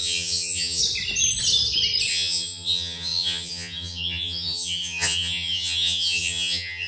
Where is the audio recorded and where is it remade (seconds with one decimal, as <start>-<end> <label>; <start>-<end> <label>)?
0.0-0.8 remade; 0.8-2.1 recorded; 2.1-6.9 remade